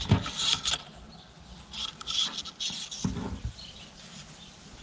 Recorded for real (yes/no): yes